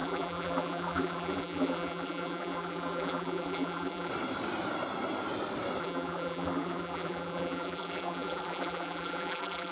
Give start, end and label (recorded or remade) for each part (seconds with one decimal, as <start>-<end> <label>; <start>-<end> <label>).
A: 0.0-4.1 remade; 4.1-5.8 recorded; 5.8-9.7 remade